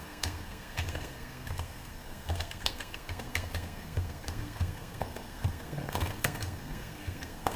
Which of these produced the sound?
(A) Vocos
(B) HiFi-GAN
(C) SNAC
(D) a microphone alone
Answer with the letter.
C